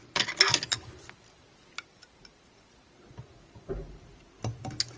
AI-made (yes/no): no